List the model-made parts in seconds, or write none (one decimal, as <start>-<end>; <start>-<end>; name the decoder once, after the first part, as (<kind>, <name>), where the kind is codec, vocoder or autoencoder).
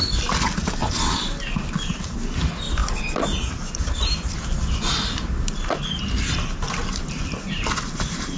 none